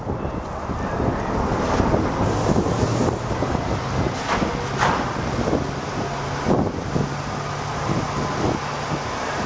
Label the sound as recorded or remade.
recorded